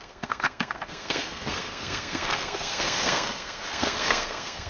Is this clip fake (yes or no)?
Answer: yes